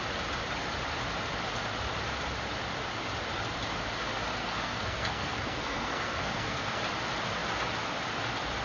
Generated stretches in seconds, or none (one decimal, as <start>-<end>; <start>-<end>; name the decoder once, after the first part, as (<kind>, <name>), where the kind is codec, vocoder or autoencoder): 4.4-6.8 (codec, SNAC)